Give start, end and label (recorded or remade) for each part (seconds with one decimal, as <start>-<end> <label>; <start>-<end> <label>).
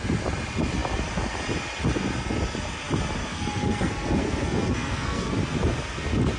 0.0-3.2 recorded; 3.2-5.3 remade; 5.3-6.4 recorded